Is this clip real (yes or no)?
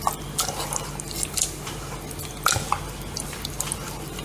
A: yes